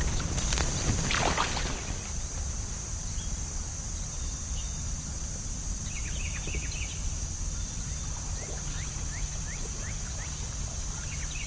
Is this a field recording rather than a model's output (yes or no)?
yes